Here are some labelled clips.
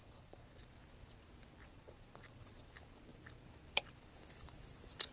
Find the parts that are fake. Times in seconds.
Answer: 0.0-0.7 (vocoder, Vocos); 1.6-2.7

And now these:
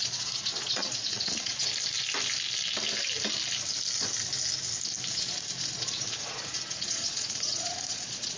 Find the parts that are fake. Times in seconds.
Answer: 0.0-1.7 (vocoder, Vocos); 5.1-8.4

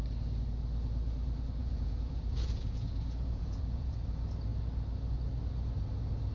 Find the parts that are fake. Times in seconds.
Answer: 1.6-3.9 (vocoder, Vocos)

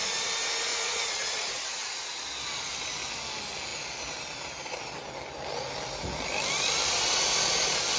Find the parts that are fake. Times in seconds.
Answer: 0.7-2.0 (vocoder, Vocos)

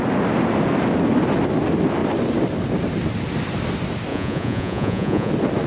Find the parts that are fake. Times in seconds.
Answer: 4.1-5.3 (vocoder, Vocos)

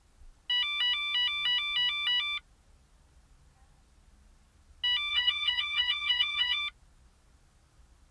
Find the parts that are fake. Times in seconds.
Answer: 5.1-6.6 (vocoder, Vocos)

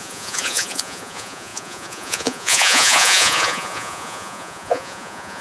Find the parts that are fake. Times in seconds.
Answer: 0.0-5.4 (vocoder, Vocos)